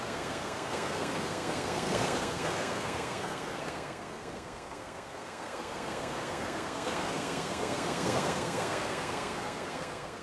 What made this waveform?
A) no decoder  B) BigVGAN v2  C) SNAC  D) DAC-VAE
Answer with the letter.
C